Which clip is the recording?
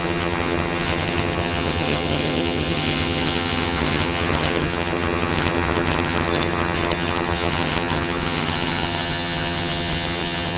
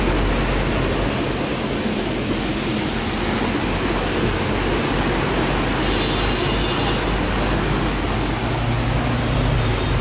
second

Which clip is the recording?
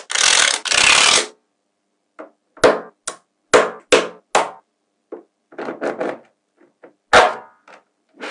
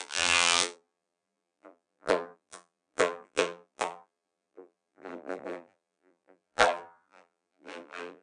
first